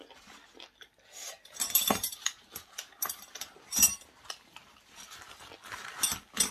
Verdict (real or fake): real